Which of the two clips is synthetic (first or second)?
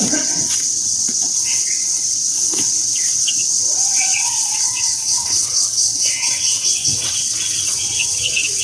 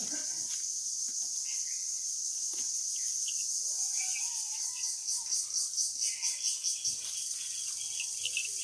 first